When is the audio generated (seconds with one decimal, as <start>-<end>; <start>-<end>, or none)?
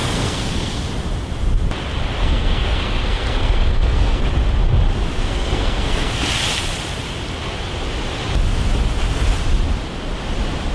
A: 0.0-0.8; 2.2-4.2; 5.1-6.2